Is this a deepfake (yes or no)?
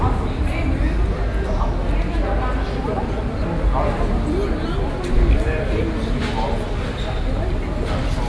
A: no